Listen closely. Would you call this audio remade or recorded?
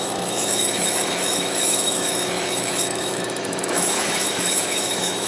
remade